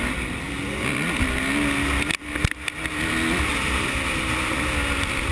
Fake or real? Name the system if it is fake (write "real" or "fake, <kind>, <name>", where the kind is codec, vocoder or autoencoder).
real